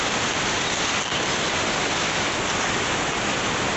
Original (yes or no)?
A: yes